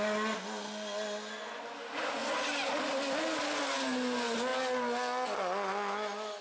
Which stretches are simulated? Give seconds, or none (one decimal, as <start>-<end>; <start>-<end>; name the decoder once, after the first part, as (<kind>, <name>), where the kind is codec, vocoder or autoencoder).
none